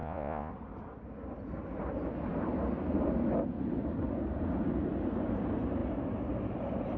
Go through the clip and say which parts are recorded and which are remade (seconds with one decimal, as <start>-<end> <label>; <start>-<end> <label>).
0.0-0.5 remade; 0.5-7.0 recorded